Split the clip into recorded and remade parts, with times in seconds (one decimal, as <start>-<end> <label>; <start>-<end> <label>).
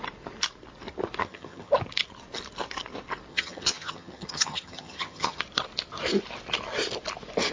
0.0-1.2 recorded; 1.2-1.7 remade; 1.7-3.3 recorded; 3.3-5.4 remade; 5.4-7.5 recorded